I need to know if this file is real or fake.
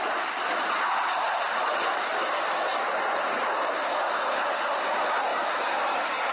real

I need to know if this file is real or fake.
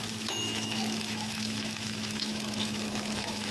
fake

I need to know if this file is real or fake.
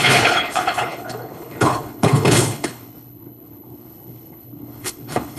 fake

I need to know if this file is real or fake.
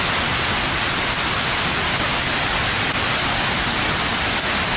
real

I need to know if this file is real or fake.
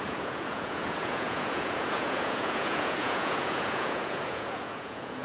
fake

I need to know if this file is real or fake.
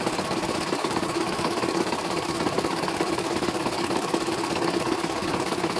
fake